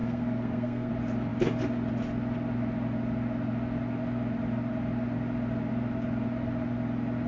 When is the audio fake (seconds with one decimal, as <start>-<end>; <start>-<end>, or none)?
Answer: 0.0-0.9